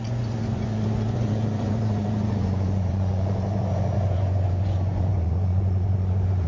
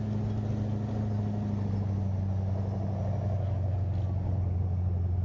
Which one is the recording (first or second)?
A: second